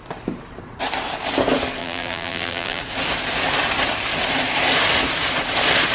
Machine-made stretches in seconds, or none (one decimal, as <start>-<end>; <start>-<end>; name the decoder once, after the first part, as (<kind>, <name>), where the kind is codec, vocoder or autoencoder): 1.8-2.8 (vocoder, BigVGAN v2)